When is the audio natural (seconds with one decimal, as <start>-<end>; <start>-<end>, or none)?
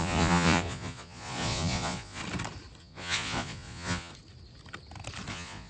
2.2-2.8; 4.1-5.3